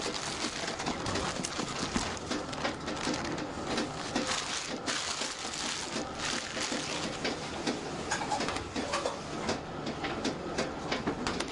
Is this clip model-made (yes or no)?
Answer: no